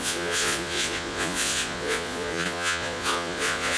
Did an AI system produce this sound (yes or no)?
yes